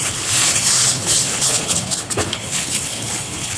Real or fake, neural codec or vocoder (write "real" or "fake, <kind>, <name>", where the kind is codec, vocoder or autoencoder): fake, codec, HILCodec